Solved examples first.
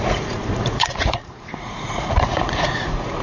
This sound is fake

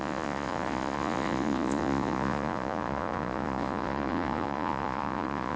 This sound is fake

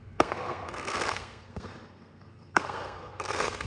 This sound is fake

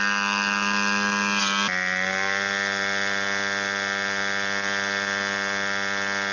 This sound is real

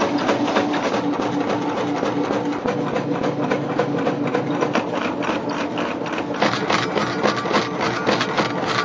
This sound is real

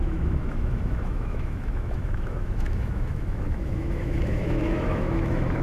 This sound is fake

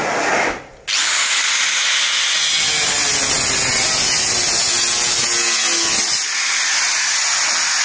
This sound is real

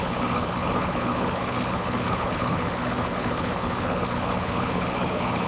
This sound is fake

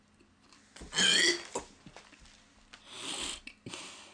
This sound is real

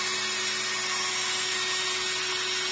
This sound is real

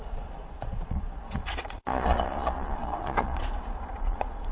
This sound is fake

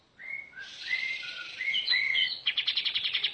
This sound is fake